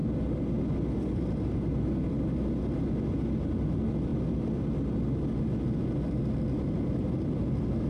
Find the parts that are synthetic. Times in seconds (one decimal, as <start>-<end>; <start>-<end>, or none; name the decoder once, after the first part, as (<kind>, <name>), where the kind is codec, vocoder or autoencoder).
none